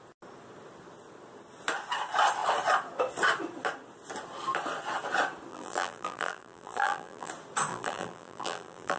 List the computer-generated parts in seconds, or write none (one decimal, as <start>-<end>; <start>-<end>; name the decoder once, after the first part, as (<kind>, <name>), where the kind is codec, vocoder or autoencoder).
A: 5.5-7.3 (vocoder, BigVGAN v2); 7.7-9.0